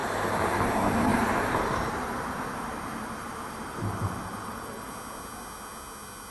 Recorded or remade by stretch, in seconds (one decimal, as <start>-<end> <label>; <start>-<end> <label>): 0.0-0.7 remade; 0.7-1.1 recorded; 1.1-4.9 remade; 4.9-6.3 recorded